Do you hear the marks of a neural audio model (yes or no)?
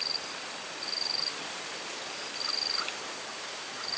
no